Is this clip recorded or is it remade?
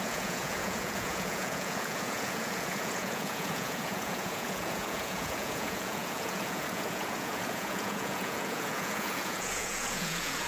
remade